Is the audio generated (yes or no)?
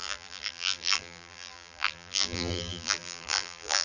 yes